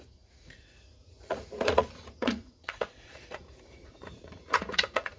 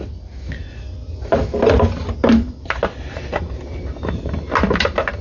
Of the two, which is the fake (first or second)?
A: first